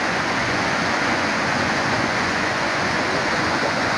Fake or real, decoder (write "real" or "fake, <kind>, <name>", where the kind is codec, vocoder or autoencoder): fake, vocoder, Vocos